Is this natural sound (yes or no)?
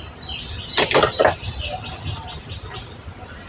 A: yes